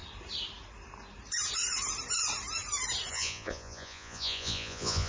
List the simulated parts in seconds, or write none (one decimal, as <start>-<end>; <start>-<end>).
3.1-5.1

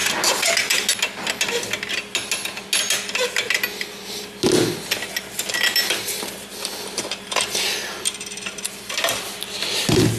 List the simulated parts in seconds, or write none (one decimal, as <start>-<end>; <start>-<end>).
none

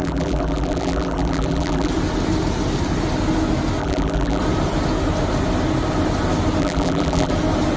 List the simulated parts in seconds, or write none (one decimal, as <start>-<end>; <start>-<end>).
0.0-1.9; 3.8-4.4; 6.6-7.3

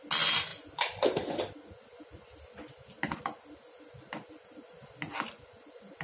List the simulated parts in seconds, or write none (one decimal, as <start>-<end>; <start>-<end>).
none

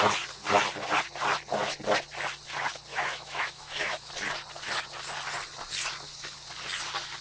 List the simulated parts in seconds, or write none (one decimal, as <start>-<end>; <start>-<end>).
2.9-4.1

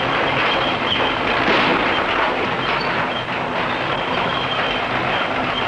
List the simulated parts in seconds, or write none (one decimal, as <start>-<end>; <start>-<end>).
0.0-1.7; 3.4-5.7

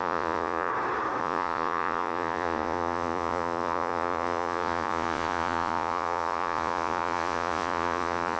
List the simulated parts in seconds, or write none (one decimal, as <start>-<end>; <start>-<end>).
0.0-0.7; 1.2-8.4